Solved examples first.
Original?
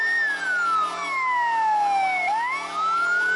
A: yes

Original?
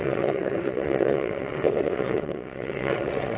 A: no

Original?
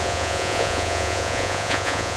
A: no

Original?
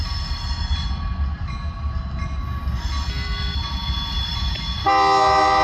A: yes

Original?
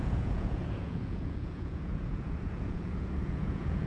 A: no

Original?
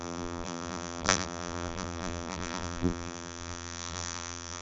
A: no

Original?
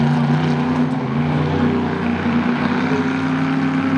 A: yes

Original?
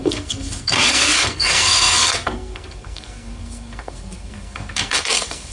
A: no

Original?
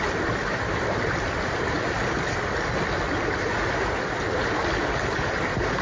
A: yes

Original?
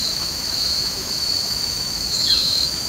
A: no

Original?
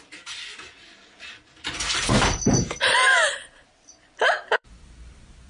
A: no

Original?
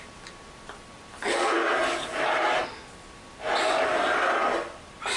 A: yes